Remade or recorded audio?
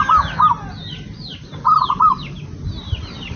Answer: recorded